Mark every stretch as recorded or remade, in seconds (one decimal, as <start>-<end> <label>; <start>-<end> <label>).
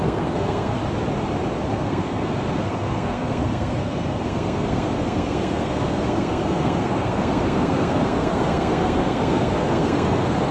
0.0-0.8 remade; 0.8-1.7 recorded; 1.7-10.5 remade